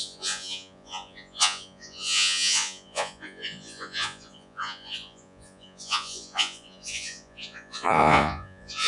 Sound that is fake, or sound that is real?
fake